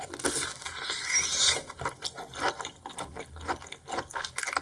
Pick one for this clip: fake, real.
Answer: real